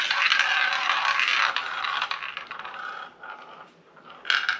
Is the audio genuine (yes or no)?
yes